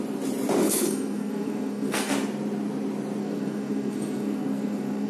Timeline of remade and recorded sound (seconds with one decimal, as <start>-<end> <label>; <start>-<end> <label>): 0.0-0.6 recorded; 0.6-2.1 remade; 2.1-3.2 recorded; 3.2-5.1 remade